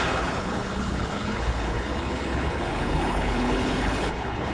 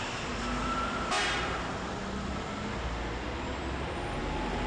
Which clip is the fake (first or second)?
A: first